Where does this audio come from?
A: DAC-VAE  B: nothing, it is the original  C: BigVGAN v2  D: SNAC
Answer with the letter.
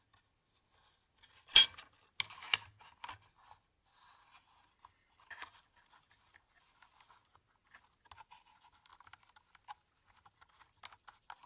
B